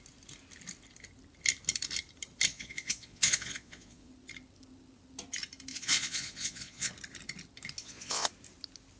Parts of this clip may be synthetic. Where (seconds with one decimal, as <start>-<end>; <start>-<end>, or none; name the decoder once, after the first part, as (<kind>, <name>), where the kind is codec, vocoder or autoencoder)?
2.5-4.1 (vocoder, Vocos); 5.7-6.9; 7.8-8.3